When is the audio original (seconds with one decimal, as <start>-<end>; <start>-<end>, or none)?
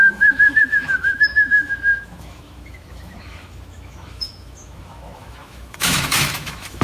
none